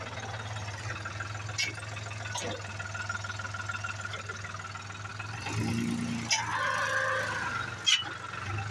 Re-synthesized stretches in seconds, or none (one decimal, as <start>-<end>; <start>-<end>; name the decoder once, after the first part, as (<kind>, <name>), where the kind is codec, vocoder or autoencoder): none